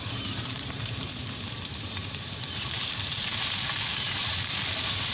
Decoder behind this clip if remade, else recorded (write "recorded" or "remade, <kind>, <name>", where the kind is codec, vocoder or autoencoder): remade, vocoder, BigVGAN v2